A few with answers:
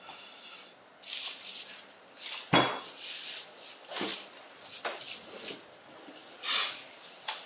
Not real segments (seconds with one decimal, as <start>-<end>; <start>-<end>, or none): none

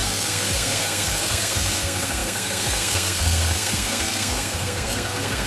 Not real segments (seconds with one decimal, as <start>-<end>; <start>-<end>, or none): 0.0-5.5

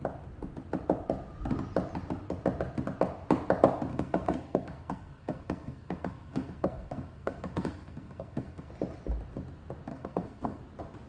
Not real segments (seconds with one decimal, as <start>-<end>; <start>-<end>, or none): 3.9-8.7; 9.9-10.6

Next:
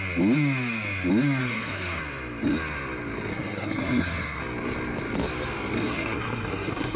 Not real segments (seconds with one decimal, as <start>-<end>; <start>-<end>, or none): 1.4-2.0; 3.3-4.4; 5.8-7.0

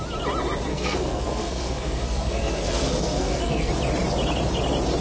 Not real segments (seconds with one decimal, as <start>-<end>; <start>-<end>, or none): 0.7-3.7